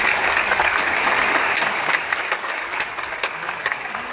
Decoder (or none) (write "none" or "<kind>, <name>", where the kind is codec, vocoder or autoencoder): codec, DAC